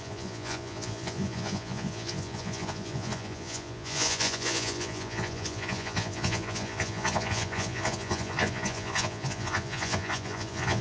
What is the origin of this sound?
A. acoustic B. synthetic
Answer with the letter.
B